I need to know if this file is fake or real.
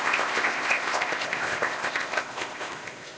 fake